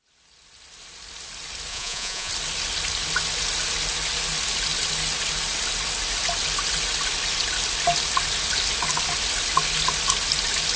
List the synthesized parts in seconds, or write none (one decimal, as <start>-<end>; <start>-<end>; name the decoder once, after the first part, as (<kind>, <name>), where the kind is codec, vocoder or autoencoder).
1.7-2.3 (vocoder, Vocos)